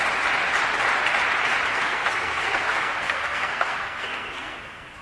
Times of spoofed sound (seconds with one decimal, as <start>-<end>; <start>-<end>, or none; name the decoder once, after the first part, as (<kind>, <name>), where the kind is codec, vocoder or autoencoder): 1.7-5.0 (codec, SNAC)